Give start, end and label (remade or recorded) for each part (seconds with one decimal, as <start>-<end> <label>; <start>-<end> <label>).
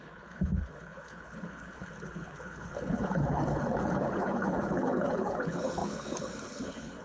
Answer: 0.0-7.0 remade